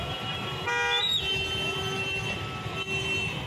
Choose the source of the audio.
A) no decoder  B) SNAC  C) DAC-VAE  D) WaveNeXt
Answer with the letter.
A